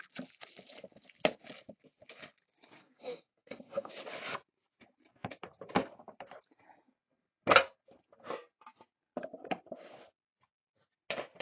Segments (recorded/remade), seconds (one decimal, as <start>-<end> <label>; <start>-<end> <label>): 0.0-2.8 recorded; 2.8-3.9 remade; 3.9-11.4 recorded